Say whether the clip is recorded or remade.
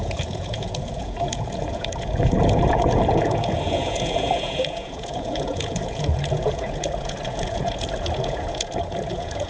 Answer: remade